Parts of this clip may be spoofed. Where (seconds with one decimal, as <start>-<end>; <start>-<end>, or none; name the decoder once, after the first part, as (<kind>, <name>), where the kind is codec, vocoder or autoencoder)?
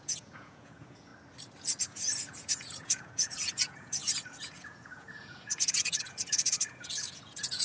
0.0-1.1 (vocoder, Vocos); 1.8-7.6